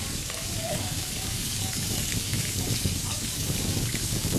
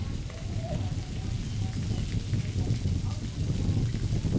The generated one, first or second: first